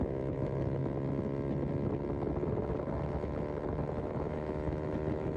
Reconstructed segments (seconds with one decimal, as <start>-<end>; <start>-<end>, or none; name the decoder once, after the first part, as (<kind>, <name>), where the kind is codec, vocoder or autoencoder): 0.0-0.8 (autoencoder, DAC-VAE); 4.0-5.4